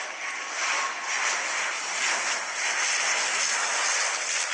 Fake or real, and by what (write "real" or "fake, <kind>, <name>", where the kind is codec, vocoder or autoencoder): real